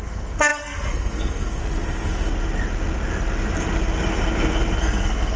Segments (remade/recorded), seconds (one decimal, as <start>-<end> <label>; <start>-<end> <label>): 0.0-1.6 remade; 1.6-4.8 recorded; 4.8-5.4 remade